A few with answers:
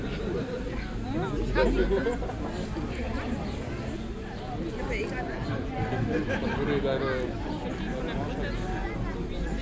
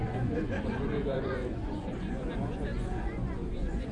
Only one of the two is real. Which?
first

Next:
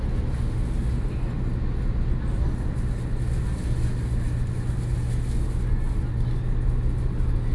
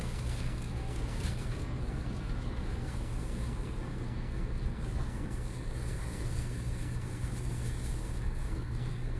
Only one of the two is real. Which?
first